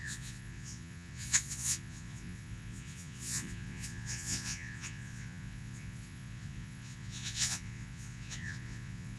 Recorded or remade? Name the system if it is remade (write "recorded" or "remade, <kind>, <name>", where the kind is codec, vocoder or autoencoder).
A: remade, vocoder, Vocos